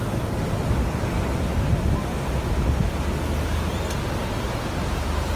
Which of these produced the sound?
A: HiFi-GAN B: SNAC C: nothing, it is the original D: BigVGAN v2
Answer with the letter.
C